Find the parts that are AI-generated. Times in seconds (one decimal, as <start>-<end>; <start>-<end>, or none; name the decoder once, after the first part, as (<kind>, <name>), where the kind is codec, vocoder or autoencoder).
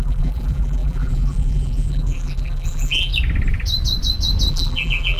0.0-3.1 (vocoder, BigVGAN v2); 4.5-5.2